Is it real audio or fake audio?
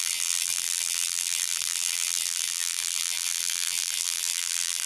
fake